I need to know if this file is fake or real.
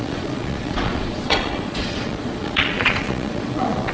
fake